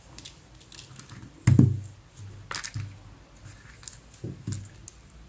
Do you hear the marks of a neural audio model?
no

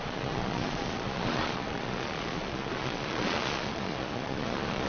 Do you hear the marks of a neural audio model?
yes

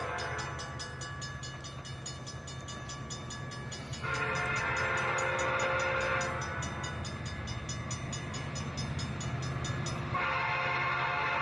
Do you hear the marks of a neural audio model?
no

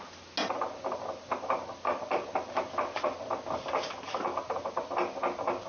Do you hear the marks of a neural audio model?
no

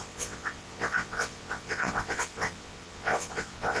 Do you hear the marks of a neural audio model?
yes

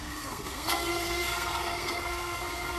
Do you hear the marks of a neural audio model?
yes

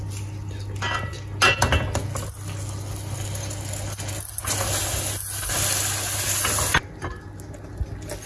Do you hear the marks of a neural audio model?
no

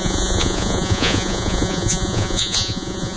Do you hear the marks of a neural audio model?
yes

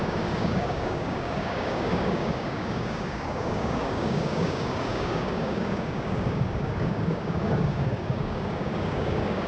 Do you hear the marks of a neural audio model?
yes